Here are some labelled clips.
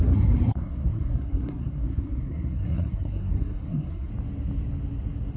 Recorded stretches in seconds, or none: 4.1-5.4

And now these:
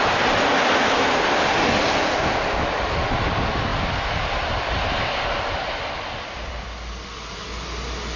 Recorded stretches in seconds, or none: 0.0-8.2

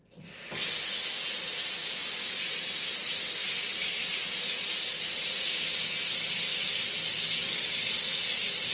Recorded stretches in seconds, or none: 0.0-8.7

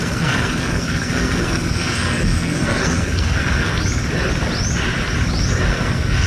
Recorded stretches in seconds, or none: 3.7-5.7

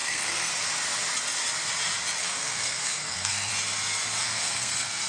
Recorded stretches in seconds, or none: 0.5-2.2; 3.5-4.2